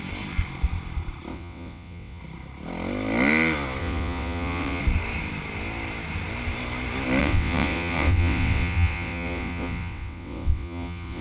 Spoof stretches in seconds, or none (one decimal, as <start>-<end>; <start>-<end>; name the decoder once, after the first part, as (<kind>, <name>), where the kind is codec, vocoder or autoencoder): 1.3-2.2 (vocoder, WaveNeXt); 3.8-4.8; 7.2-11.2

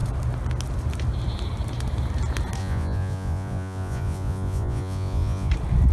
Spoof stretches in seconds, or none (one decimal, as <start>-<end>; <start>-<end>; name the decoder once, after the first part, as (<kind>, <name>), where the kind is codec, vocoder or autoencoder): 2.6-5.5 (vocoder, Vocos)

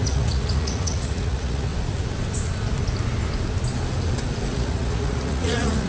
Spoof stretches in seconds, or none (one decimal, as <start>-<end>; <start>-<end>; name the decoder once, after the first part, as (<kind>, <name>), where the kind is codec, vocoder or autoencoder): 0.0-1.7 (vocoder, Vocos); 4.5-5.9

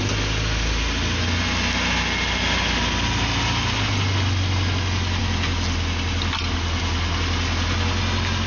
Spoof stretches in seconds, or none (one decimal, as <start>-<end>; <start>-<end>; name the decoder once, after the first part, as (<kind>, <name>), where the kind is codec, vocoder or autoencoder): none

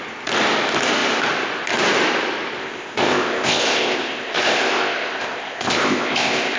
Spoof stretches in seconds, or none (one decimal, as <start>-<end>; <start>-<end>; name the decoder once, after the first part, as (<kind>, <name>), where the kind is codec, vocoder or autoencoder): 2.6-6.6 (codec, ZipCodec)

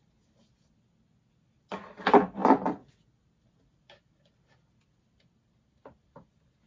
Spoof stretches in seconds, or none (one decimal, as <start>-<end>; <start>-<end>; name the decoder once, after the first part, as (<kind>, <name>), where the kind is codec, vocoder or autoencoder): none

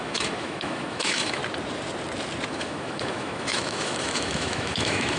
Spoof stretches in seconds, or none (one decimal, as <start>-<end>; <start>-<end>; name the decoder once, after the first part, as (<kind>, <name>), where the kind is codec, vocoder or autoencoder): 0.0-1.4 (autoencoder, DAC-VAE); 2.5-5.2